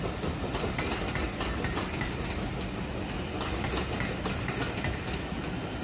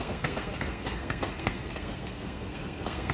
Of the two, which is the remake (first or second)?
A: second